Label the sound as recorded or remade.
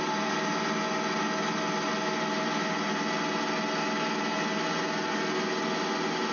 recorded